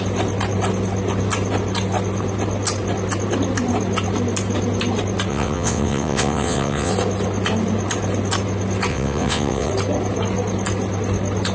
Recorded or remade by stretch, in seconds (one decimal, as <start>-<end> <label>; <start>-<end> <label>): 0.0-5.3 recorded; 5.3-6.9 remade; 6.9-8.9 recorded; 8.9-9.7 remade; 9.7-11.5 recorded